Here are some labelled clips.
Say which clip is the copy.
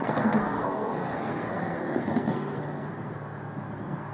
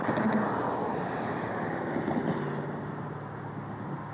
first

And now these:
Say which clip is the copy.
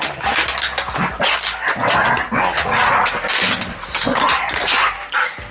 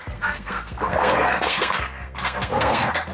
second